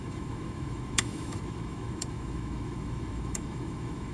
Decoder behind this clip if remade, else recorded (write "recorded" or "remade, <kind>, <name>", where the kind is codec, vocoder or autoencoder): remade, autoencoder, DAC-VAE